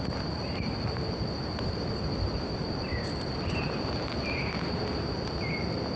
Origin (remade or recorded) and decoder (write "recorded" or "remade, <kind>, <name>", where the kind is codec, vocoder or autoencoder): recorded